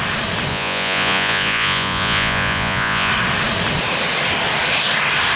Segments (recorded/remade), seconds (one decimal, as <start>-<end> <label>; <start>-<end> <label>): 0.0-0.5 recorded; 0.5-3.1 remade; 3.1-5.4 recorded